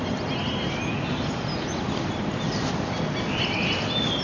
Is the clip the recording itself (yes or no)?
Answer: yes